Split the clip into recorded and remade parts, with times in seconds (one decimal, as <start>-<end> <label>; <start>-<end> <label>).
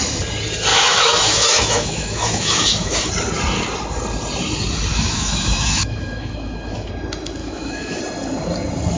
0.0-0.7 recorded; 0.7-3.1 remade; 3.1-4.9 recorded; 4.9-6.9 remade; 6.9-7.4 recorded; 7.4-8.0 remade; 8.0-9.0 recorded